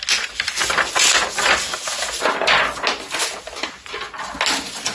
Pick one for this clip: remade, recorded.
recorded